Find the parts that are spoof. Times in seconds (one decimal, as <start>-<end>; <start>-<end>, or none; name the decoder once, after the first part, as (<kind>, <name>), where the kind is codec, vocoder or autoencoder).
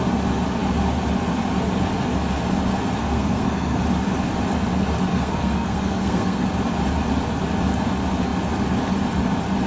3.0-3.8 (codec, SNAC); 5.1-6.5